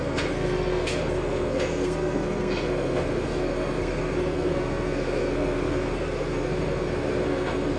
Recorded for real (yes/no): no